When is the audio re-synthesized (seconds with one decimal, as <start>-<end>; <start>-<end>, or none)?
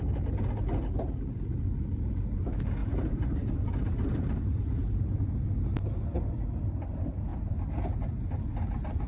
2.8-5.3